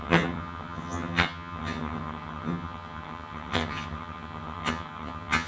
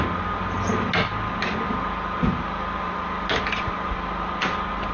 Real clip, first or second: second